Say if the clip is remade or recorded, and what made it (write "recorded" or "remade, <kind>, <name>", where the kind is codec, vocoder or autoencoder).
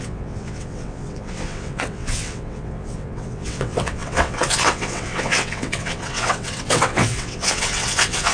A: remade, vocoder, WaveNeXt